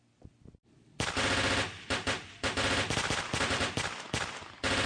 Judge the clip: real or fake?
real